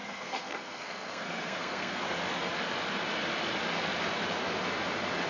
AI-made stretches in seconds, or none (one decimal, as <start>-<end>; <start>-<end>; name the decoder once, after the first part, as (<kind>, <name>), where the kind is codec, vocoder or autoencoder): 0.0-2.0 (codec, SNAC)